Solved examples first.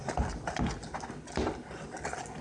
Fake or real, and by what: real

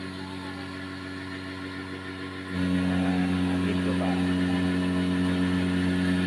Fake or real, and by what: real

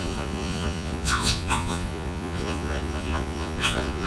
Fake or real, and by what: fake, vocoder, Vocos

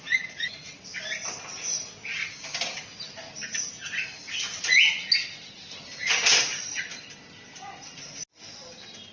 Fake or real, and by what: real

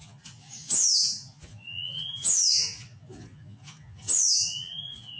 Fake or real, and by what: fake, vocoder, Vocos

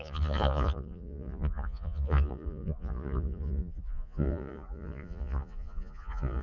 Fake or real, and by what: fake, vocoder, Vocos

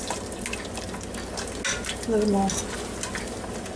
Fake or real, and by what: real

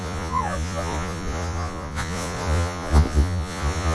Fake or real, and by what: fake, vocoder, Vocos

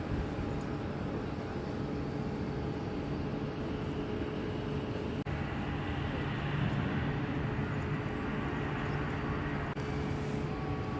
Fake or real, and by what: real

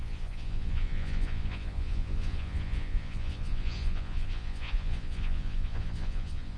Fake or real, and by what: fake, vocoder, Vocos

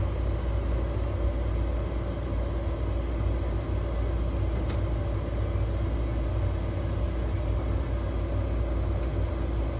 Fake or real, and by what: real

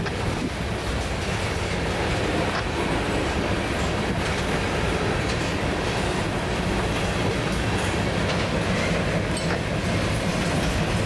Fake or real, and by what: real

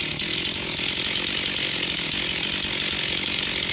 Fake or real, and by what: real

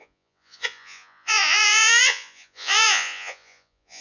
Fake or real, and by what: fake, vocoder, Vocos